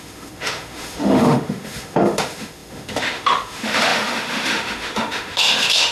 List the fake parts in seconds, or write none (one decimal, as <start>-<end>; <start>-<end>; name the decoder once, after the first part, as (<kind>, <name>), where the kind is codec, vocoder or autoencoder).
0.0-5.9 (autoencoder, DAC-VAE)